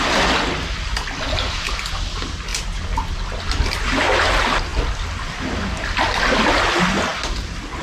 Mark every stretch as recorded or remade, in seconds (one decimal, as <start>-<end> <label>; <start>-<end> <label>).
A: 0.0-7.8 recorded